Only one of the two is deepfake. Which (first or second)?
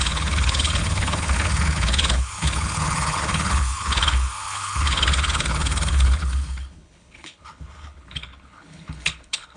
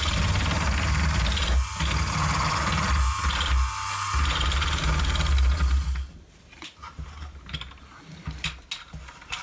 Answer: first